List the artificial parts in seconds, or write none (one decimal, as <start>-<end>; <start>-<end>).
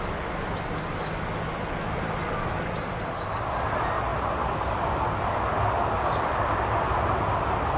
none